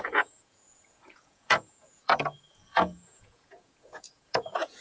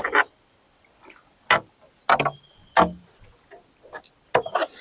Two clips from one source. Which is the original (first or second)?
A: second